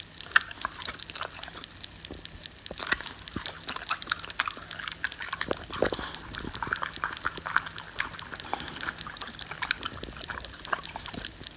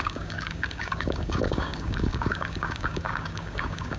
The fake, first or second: second